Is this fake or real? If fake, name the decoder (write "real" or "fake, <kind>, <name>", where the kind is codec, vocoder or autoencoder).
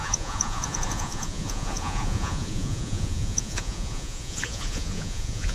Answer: fake, vocoder, Vocos